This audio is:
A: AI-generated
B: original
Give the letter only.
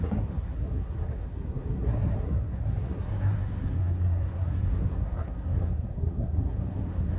A